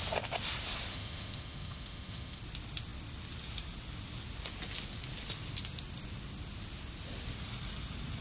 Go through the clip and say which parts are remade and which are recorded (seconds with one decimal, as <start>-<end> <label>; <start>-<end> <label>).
0.0-0.9 recorded; 0.9-2.4 remade; 2.4-8.2 recorded